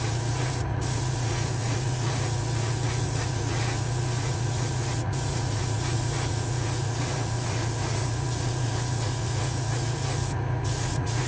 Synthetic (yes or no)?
yes